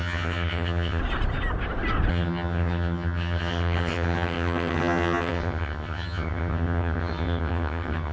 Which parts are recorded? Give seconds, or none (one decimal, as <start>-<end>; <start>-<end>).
1.0-2.1